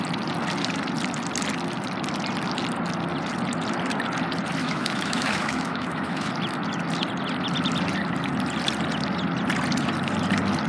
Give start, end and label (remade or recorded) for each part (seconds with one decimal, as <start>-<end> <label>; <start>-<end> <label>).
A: 0.0-4.6 recorded; 4.6-6.3 remade; 6.3-10.7 recorded